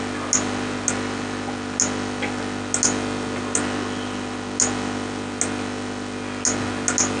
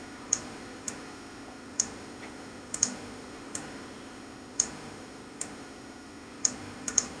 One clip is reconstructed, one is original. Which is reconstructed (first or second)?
second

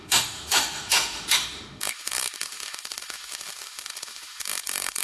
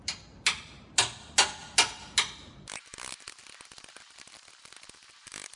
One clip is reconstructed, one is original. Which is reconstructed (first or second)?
first